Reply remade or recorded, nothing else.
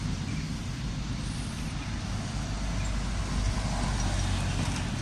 recorded